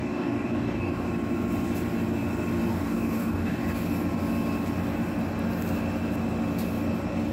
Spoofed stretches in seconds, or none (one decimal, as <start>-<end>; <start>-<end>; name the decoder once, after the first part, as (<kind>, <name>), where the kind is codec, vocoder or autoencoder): 0.0-1.1 (codec, DAC); 2.7-3.6